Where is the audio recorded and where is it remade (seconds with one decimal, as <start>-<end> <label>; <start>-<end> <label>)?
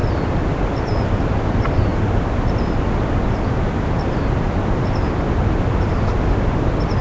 0.0-1.4 remade; 1.4-7.0 recorded